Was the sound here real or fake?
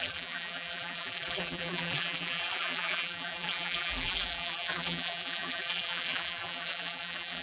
fake